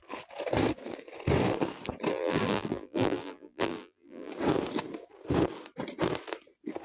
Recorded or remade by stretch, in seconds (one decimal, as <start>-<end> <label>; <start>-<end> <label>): 0.0-2.1 recorded; 2.1-4.3 remade; 4.3-6.8 recorded